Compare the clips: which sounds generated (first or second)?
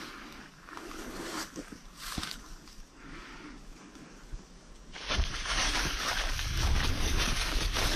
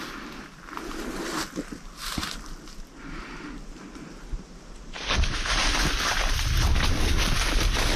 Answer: first